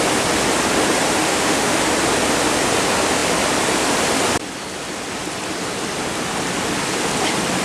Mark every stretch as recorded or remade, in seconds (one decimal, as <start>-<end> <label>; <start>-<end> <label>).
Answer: 0.0-1.2 recorded; 1.2-1.8 remade; 1.8-7.6 recorded